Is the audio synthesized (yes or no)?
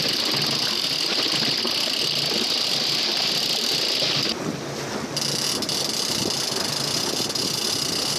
no